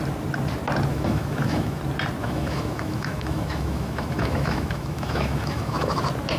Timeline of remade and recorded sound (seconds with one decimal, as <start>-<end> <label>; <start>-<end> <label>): 0.0-0.9 recorded; 0.9-1.8 remade; 1.8-2.2 recorded; 2.2-6.0 remade; 6.0-6.4 recorded